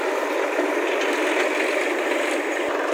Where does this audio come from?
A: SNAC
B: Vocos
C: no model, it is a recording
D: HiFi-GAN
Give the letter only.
C